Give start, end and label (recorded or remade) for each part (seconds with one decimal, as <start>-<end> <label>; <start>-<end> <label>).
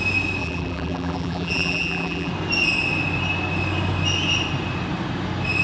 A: 0.0-0.4 recorded; 0.4-2.3 remade; 2.3-5.6 recorded